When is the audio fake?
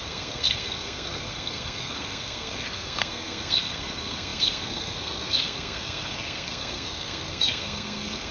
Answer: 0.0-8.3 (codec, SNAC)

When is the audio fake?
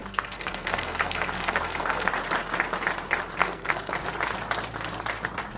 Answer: 0.0-2.1 (codec, SNAC); 3.4-3.9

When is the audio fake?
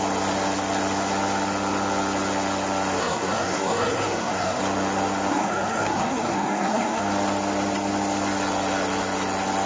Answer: 3.0-4.6 (codec, SNAC); 5.3-7.0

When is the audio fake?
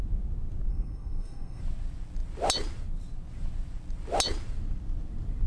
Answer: 0.7-1.6 (codec, SNAC)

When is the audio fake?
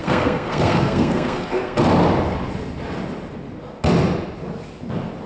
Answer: 0.0-1.8 (codec, SNAC)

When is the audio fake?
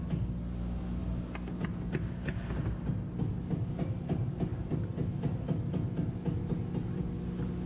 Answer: none